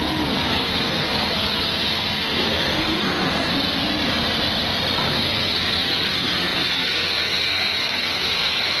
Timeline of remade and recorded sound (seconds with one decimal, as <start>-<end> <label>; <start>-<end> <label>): 0.0-3.5 remade; 3.5-5.1 recorded; 5.1-8.8 remade